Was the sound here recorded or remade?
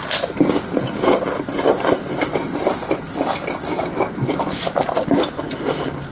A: recorded